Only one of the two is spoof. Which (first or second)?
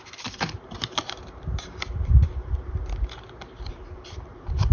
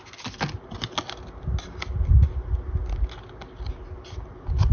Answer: first